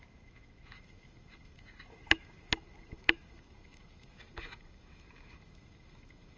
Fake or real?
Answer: fake